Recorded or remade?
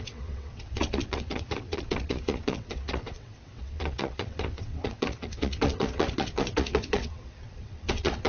remade